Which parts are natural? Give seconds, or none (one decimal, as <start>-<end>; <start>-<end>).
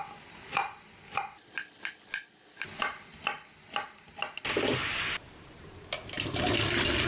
0.0-7.1